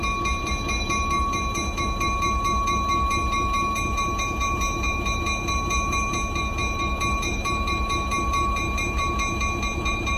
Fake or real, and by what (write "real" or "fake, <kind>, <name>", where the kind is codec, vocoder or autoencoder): fake, vocoder, BigVGAN v2